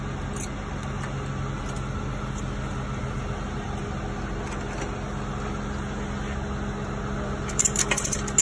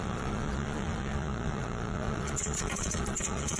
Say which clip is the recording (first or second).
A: first